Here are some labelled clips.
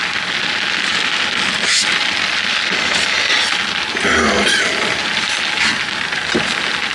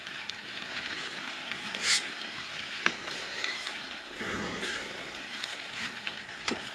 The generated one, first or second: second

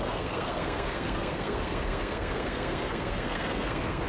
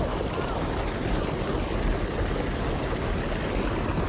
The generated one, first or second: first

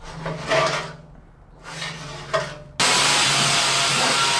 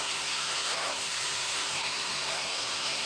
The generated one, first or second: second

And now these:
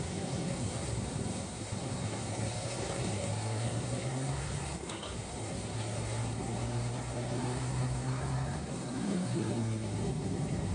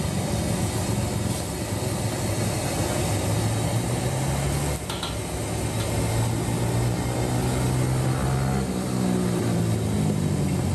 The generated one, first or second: first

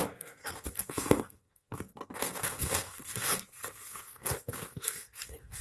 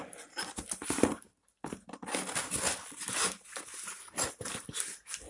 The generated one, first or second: first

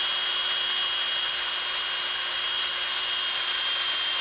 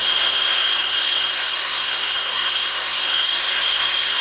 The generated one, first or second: second